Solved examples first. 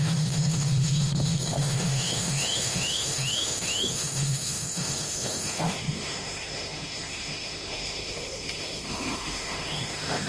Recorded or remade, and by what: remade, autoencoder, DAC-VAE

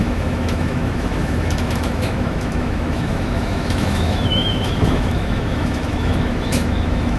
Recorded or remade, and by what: remade, autoencoder, DAC-VAE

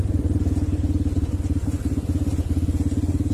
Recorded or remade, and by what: recorded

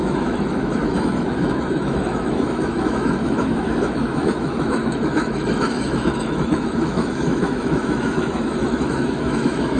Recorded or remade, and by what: remade, autoencoder, DAC-VAE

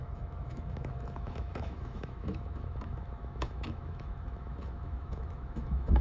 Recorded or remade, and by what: remade, autoencoder, DAC-VAE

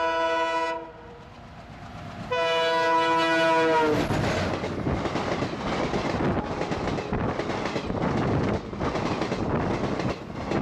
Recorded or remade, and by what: recorded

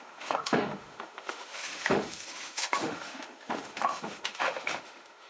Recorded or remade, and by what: remade, autoencoder, DAC-VAE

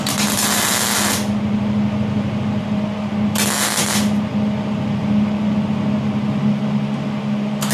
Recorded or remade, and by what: recorded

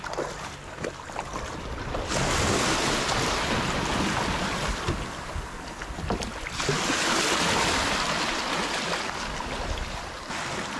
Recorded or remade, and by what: recorded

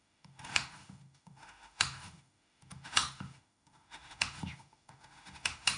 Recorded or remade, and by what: remade, autoencoder, DAC-VAE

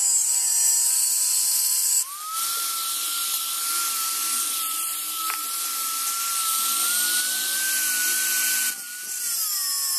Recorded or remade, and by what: recorded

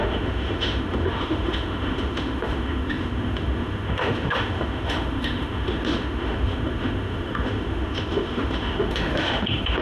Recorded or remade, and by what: remade, autoencoder, DAC-VAE